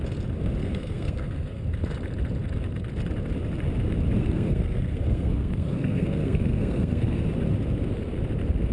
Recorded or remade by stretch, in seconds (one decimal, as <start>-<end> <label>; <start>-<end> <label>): 0.0-0.6 recorded; 0.6-1.6 remade; 1.6-4.2 recorded; 4.2-7.2 remade; 7.2-8.7 recorded